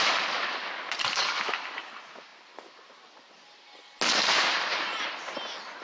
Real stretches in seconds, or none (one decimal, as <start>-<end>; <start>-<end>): 0.0-5.8